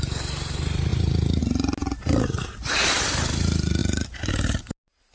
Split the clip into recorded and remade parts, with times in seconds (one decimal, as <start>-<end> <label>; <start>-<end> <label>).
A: 0.0-5.1 recorded